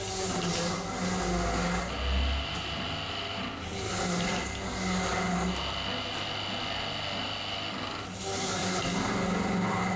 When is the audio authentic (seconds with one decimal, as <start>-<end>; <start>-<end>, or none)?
0.0-10.0